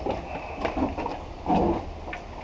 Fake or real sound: real